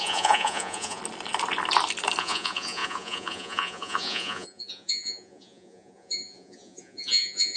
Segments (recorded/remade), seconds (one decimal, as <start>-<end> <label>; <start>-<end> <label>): 0.0-1.0 remade; 1.0-2.2 recorded; 2.2-7.6 remade

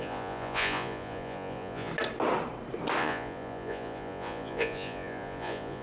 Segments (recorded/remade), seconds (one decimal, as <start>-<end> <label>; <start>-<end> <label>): 0.0-1.9 remade; 1.9-3.0 recorded; 3.0-5.8 remade

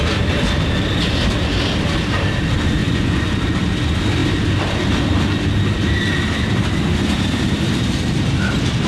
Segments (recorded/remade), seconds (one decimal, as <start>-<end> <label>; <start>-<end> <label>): 0.0-2.8 recorded; 2.8-3.4 remade; 3.4-8.9 recorded

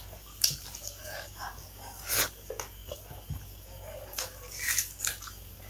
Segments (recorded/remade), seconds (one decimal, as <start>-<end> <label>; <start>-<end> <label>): 0.0-5.7 remade

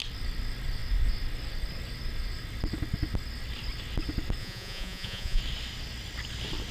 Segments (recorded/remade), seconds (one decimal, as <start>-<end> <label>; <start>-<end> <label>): 0.0-4.4 recorded; 4.4-5.4 remade; 5.4-6.7 recorded

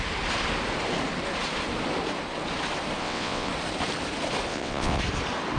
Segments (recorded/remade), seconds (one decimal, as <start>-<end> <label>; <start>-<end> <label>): 0.0-3.0 recorded; 3.0-3.5 remade; 3.5-4.5 recorded; 4.5-5.0 remade; 5.0-5.6 recorded

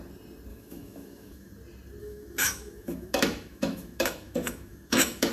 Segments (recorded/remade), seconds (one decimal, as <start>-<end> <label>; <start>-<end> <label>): 0.0-0.5 recorded; 0.5-1.5 remade; 1.5-2.0 recorded; 2.0-5.3 remade